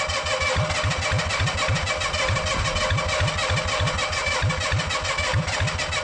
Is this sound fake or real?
real